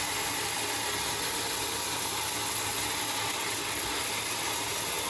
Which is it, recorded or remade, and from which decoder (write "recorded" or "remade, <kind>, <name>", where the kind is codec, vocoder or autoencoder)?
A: recorded